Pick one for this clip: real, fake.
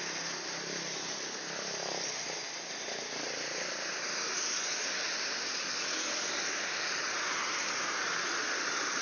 real